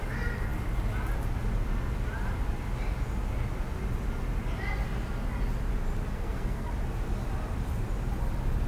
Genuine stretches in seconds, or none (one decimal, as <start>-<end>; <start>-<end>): 0.0-6.1; 6.7-8.7